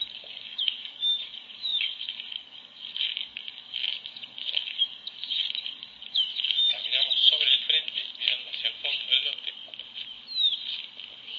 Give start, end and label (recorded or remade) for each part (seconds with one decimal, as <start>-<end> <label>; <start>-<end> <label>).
0.0-6.8 remade; 6.8-11.4 recorded